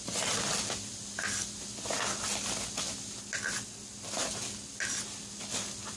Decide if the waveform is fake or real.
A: real